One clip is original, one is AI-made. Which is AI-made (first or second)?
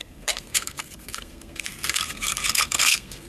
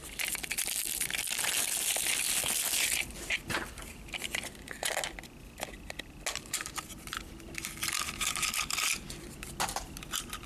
first